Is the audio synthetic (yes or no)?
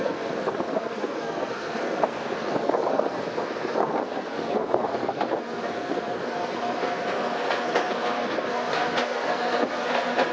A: yes